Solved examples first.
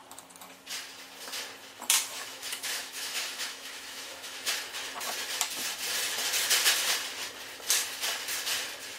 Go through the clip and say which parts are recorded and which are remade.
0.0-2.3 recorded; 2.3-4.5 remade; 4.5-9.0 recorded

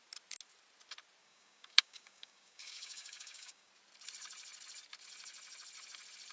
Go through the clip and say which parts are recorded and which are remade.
0.0-1.2 recorded; 1.2-3.7 remade; 3.7-6.3 recorded

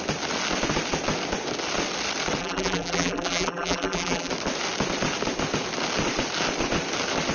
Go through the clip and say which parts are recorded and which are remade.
0.0-2.4 recorded; 2.4-4.3 remade; 4.3-7.3 recorded

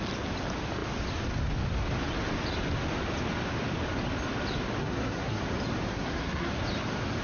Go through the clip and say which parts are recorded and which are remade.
0.0-4.8 recorded; 4.8-5.4 remade; 5.4-5.9 recorded; 5.9-6.5 remade; 6.5-7.2 recorded

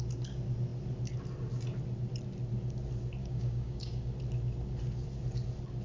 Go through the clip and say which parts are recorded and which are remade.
0.0-3.2 recorded; 3.2-4.1 remade; 4.1-5.8 recorded

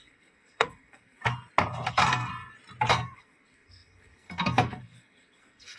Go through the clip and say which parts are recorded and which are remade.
0.0-1.2 remade; 1.2-1.9 recorded; 1.9-2.3 remade; 2.3-2.9 recorded; 2.9-5.8 remade